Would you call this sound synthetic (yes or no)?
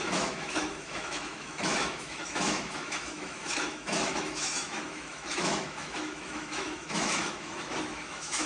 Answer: yes